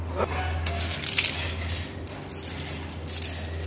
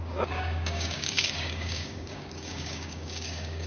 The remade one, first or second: second